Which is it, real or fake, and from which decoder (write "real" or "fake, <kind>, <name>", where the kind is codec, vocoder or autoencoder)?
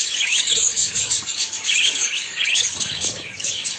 fake, codec, DAC